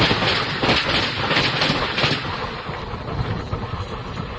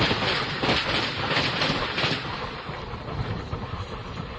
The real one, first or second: first